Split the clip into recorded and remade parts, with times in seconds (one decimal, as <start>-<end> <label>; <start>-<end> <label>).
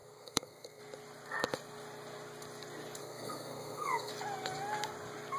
0.0-0.8 remade; 0.8-3.0 recorded; 3.0-4.1 remade; 4.1-5.4 recorded